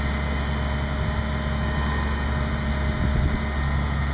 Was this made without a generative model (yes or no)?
yes